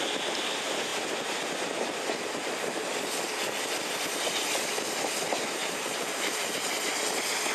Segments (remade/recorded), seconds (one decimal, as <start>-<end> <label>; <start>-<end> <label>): 0.0-5.6 recorded; 5.6-6.9 remade; 6.9-7.5 recorded